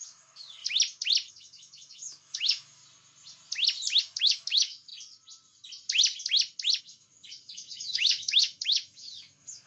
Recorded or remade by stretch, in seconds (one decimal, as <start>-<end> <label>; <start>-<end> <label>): 0.0-0.6 remade; 0.6-1.3 recorded; 1.3-2.8 remade; 2.8-4.0 recorded; 4.0-4.9 remade; 4.9-6.8 recorded; 6.8-9.7 remade